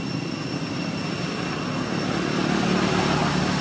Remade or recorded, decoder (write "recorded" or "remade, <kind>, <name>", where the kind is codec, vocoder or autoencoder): recorded